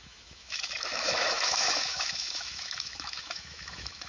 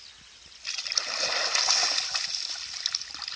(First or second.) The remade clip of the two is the first